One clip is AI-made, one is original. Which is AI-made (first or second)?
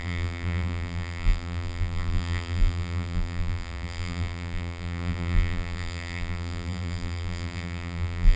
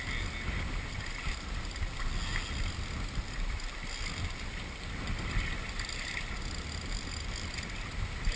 first